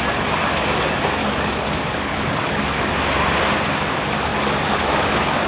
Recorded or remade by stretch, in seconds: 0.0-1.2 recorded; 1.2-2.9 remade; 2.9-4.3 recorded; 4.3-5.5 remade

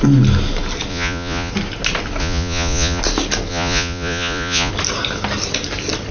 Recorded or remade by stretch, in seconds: 0.0-0.9 recorded; 0.9-1.5 remade; 1.5-2.2 recorded; 2.2-3.0 remade; 3.0-3.5 recorded; 3.5-4.7 remade; 4.7-6.1 recorded

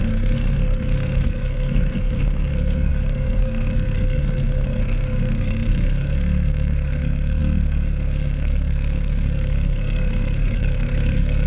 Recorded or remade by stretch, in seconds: 0.0-11.5 remade

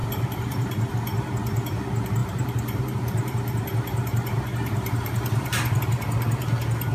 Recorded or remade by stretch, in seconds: 0.0-0.9 remade; 0.9-2.2 recorded; 2.2-5.8 remade; 5.8-6.9 recorded